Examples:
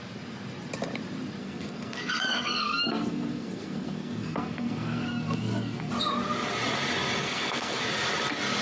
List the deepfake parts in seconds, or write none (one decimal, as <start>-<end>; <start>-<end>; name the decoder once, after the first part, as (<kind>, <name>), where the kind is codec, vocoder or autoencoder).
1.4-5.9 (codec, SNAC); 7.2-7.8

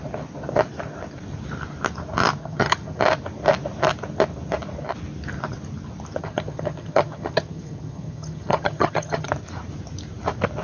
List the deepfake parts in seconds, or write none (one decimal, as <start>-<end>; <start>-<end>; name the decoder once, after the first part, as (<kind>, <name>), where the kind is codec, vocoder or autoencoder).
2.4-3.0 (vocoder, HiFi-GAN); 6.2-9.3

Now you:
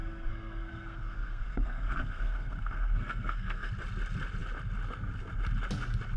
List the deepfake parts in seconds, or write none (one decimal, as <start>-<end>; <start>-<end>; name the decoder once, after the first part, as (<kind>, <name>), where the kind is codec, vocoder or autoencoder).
0.0-3.7 (codec, SNAC)

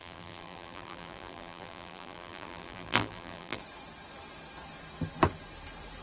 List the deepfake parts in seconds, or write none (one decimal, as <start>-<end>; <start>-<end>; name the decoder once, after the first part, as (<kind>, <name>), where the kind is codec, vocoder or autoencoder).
0.0-3.6 (vocoder, BigVGAN v2)

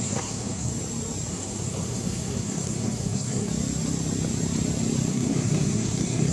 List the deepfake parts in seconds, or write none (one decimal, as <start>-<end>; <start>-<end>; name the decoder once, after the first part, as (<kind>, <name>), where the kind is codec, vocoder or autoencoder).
0.0-0.7 (codec, SNAC); 1.3-3.5; 5.1-6.3